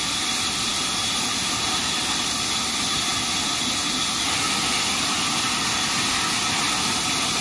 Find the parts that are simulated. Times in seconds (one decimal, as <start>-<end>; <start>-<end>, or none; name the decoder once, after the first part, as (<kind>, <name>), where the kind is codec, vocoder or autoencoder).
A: none